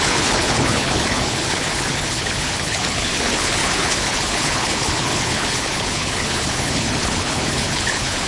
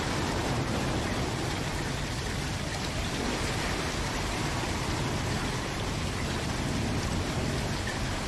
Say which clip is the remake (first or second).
first